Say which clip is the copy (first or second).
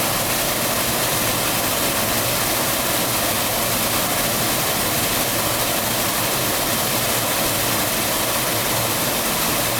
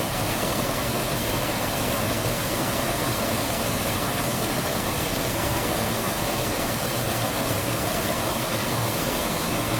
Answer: second